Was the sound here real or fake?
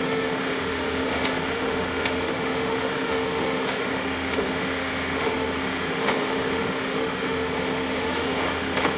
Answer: fake